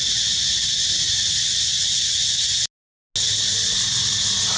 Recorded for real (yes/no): yes